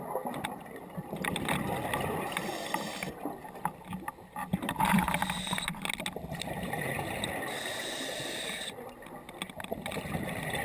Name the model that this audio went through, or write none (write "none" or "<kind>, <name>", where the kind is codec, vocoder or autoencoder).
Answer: none